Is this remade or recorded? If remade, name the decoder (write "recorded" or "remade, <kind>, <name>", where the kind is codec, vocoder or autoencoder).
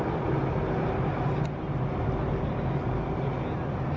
recorded